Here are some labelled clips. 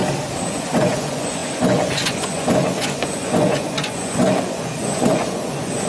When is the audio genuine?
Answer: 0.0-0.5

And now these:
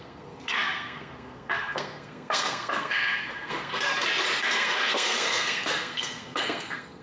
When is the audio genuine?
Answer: 3.9-4.4

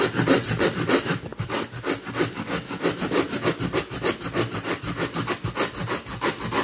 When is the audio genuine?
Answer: 0.0-6.6

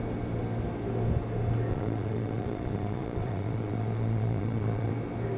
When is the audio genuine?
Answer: 0.0-1.7; 4.9-5.4